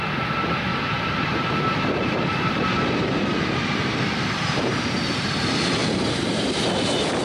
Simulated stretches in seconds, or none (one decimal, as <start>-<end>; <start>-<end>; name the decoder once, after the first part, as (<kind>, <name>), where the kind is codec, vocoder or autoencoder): 0.7-5.0 (vocoder, BigVGAN v2); 5.8-6.6